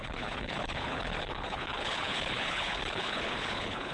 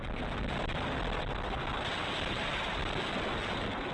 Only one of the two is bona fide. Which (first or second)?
second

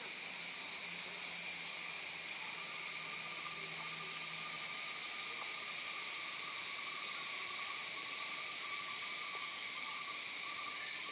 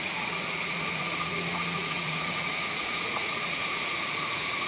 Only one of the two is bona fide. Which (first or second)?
first